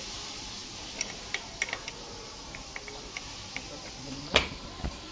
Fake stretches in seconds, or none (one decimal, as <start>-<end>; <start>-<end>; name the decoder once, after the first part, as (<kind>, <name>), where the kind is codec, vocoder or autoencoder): none